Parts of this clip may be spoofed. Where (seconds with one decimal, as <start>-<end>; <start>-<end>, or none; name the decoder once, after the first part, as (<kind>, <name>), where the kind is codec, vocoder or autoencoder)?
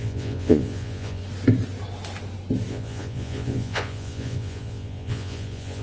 0.0-1.2 (vocoder, Vocos); 2.7-5.8